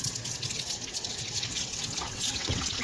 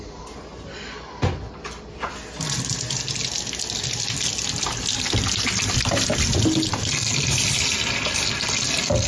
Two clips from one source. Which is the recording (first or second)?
second